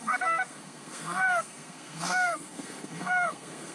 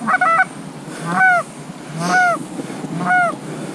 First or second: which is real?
second